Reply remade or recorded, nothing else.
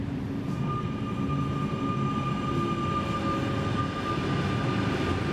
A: recorded